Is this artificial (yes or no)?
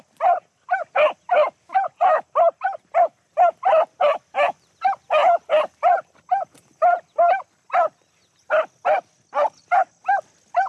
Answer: no